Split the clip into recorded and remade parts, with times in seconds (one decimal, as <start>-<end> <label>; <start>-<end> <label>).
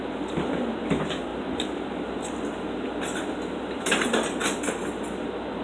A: 0.0-5.6 recorded